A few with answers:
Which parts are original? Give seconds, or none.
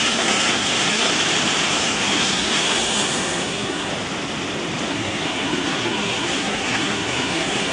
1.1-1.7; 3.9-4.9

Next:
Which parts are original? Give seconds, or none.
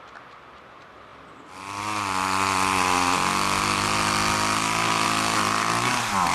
0.0-6.3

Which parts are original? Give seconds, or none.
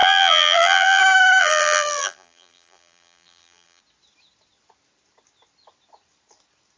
1.0-1.4; 3.8-6.8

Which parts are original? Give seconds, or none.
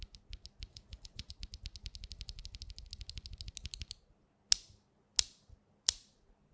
0.0-0.7; 1.3-6.5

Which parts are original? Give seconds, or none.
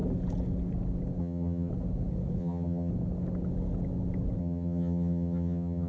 0.0-1.2; 1.7-2.4; 2.9-4.4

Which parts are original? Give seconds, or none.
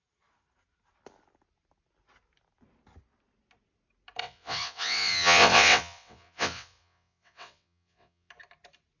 0.0-4.2; 8.3-9.0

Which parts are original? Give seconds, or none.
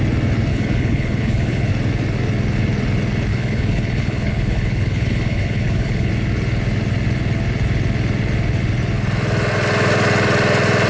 0.0-0.5; 1.7-3.3; 6.1-10.9